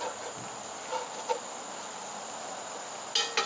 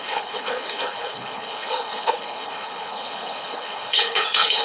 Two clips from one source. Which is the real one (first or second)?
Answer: first